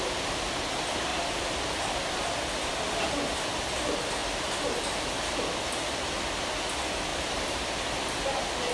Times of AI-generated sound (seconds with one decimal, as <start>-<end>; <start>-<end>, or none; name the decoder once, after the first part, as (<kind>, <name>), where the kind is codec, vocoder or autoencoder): 1.1-1.8 (vocoder, BigVGAN v2); 7.1-7.8